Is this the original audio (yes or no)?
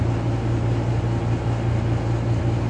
yes